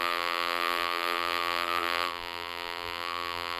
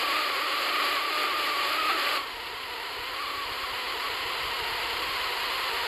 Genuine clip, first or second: second